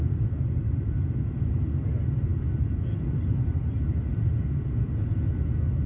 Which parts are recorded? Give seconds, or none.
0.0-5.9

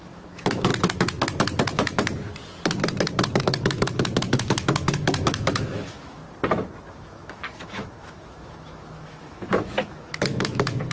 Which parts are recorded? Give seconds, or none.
0.7-3.4; 6.2-6.9

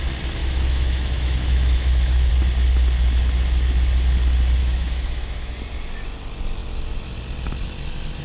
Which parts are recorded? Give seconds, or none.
0.0-0.4; 2.3-4.6; 5.5-8.2

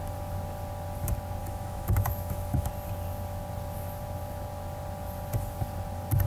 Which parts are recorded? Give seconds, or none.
0.0-1.4; 2.7-6.3

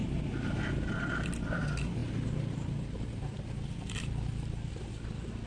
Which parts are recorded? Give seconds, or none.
0.0-5.5

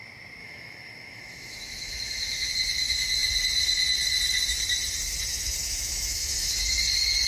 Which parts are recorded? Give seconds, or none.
0.0-0.4; 2.5-5.3; 6.6-7.3